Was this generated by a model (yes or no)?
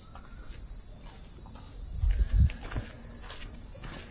no